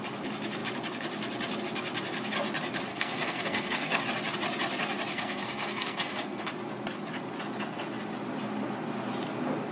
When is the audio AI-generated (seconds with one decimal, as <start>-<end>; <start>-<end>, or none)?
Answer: 2.9-4.0; 5.1-6.5